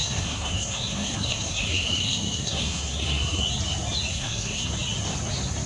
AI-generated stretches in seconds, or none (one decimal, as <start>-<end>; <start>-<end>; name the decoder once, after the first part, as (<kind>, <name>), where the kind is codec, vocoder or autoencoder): 0.0-3.4 (codec, SNAC); 4.1-4.7